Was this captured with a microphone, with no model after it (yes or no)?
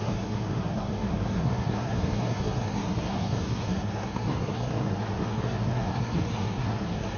no